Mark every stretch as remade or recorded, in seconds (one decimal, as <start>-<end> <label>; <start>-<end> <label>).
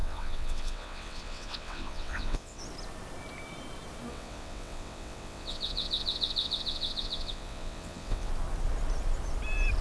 0.0-2.6 remade; 2.6-4.1 recorded; 4.1-8.3 remade; 8.3-9.8 recorded